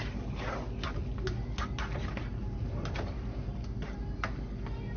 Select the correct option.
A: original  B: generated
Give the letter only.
A